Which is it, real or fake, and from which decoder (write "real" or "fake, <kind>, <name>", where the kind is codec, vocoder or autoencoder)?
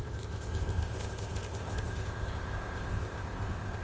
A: fake, codec, ZipCodec